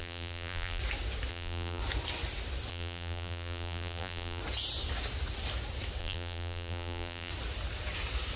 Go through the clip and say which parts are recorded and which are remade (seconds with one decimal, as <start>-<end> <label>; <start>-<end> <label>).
0.0-0.8 remade; 0.8-1.3 recorded; 1.3-1.8 remade; 1.8-2.7 recorded; 2.7-4.4 remade; 4.4-6.0 recorded; 6.0-7.3 remade; 7.3-8.4 recorded